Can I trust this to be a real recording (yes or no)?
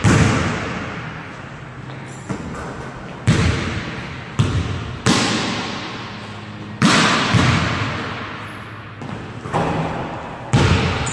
yes